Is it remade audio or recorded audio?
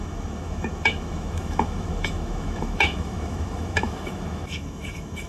remade